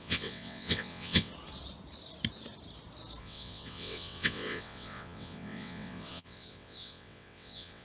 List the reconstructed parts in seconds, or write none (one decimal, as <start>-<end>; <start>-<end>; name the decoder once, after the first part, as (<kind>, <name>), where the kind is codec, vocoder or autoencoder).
0.0-1.3 (vocoder, WaveNeXt); 3.2-7.8